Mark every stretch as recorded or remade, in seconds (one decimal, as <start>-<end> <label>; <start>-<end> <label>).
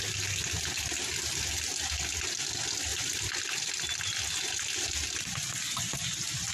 0.0-2.9 recorded; 2.9-3.8 remade; 3.8-6.5 recorded